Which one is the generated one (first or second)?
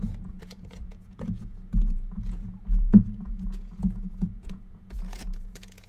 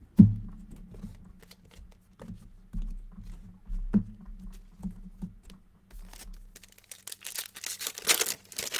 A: first